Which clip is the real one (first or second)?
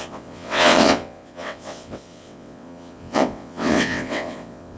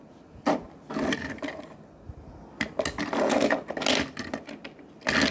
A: second